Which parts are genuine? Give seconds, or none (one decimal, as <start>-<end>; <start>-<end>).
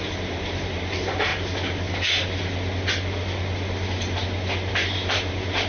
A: 1.3-4.7